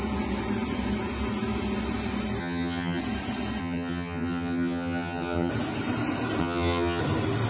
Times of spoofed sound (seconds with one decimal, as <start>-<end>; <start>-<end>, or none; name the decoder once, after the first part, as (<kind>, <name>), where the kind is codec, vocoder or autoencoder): 2.4-3.0 (vocoder, HiFi-GAN); 3.6-5.5; 6.4-7.0